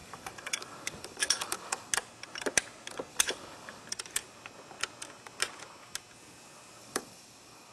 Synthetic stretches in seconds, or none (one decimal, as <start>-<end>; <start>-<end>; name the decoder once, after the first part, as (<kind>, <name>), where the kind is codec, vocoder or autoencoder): 0.0-1.9 (codec, DAC); 3.1-3.8; 6.8-7.7